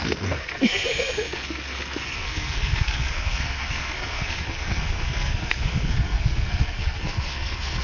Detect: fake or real fake